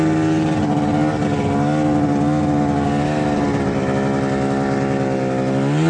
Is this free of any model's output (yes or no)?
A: yes